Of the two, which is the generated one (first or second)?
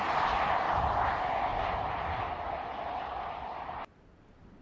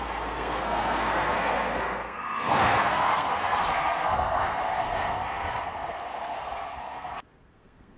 second